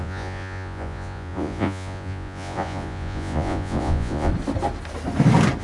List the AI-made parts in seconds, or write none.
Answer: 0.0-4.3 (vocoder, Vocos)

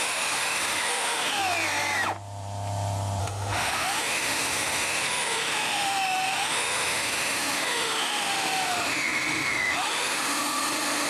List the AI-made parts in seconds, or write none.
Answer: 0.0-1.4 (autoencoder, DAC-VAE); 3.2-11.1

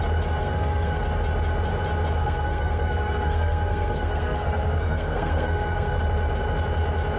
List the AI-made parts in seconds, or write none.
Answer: 0.4-1.0 (codec, SNAC); 2.2-6.0

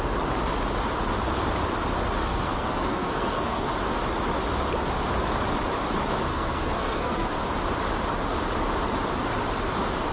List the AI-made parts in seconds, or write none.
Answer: 2.2-3.7 (codec, SNAC); 6.3-7.3

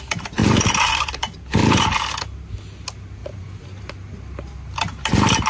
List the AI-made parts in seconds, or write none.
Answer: 0.4-1.2 (vocoder, BigVGAN v2); 1.6-2.2; 3.2-3.9